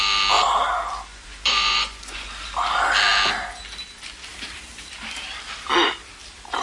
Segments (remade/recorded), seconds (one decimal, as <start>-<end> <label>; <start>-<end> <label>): 0.0-1.1 recorded; 1.1-2.3 remade; 2.3-6.6 recorded